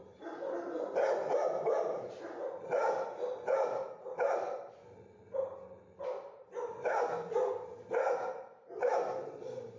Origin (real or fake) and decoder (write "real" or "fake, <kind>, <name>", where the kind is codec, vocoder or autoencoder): real